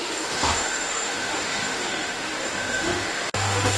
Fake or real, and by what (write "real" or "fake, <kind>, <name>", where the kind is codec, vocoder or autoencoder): fake, autoencoder, DAC-VAE